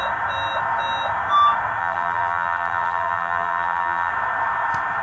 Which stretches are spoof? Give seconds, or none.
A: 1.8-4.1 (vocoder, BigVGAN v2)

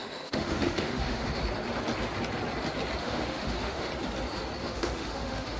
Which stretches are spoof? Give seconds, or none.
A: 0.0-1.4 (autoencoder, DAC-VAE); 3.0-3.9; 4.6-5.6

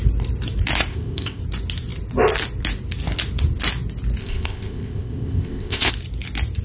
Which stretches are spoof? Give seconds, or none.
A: 0.9-1.4 (codec, ZipCodec); 4.2-5.9

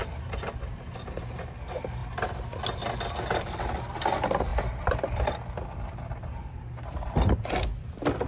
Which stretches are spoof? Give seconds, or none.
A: none

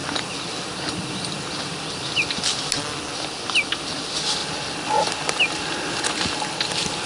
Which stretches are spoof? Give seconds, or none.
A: none